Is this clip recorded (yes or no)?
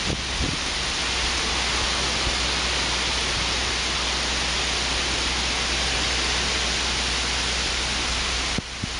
yes